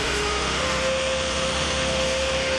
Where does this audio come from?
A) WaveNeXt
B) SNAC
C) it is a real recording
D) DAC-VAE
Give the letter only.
D